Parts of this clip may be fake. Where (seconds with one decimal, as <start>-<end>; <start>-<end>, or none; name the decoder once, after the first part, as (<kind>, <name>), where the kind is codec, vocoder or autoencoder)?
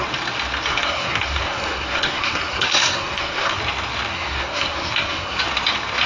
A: 0.7-3.6 (codec, SNAC); 4.1-5.4